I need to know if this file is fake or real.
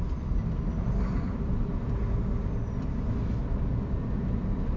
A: real